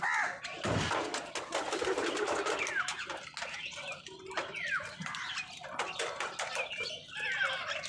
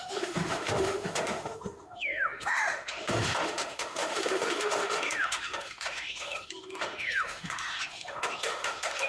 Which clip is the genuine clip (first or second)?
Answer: first